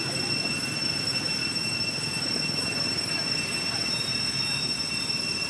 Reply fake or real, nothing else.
real